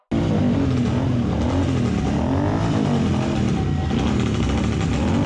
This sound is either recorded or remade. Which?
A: recorded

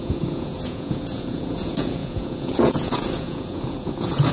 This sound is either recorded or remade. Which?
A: remade